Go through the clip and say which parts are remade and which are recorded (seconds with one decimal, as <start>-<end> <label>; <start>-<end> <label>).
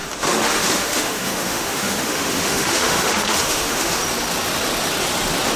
0.0-4.0 remade; 4.0-5.6 recorded